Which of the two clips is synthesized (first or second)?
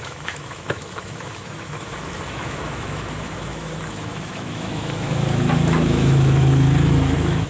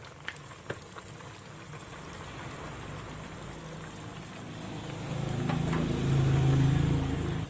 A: first